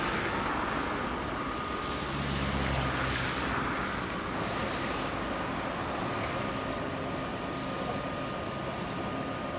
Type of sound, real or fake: real